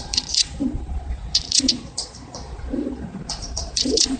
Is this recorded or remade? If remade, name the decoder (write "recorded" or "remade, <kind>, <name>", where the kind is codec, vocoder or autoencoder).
remade, vocoder, Vocos